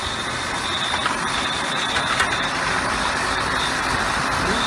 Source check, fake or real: real